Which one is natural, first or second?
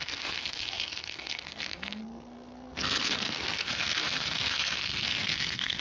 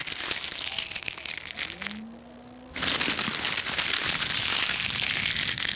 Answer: second